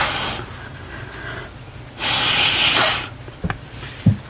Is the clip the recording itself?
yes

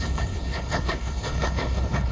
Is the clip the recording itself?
no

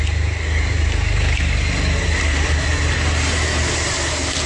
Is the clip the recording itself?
yes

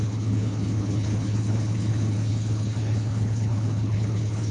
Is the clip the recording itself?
no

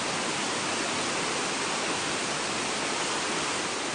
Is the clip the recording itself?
yes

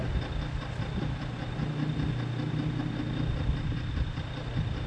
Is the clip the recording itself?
yes